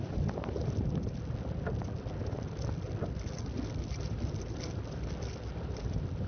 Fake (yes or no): no